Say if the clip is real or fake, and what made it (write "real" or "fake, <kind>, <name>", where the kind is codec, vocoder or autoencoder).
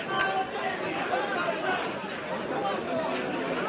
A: real